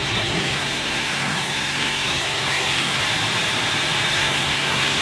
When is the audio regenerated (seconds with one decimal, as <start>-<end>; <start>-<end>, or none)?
0.0-3.0; 4.1-5.0